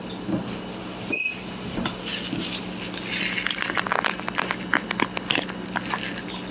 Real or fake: real